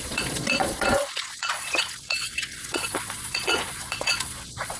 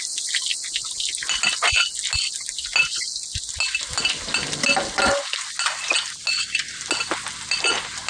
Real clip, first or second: second